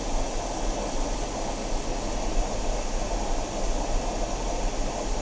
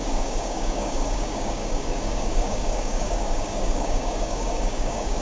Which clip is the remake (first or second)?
second